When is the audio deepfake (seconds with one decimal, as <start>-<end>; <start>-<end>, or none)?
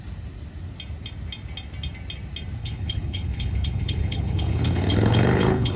2.6-5.8